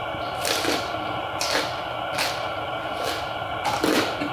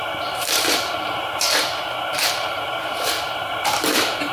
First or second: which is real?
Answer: first